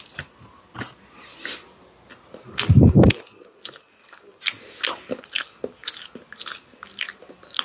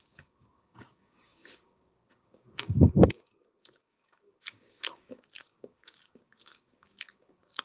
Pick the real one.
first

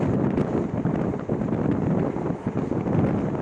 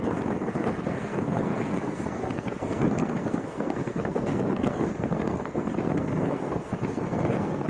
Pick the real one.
first